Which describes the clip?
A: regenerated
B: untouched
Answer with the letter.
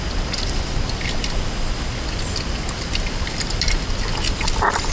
B